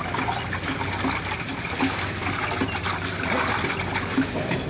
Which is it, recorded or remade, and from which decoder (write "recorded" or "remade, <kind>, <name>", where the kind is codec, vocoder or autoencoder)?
recorded